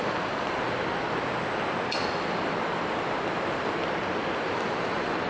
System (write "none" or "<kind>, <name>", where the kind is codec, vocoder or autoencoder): none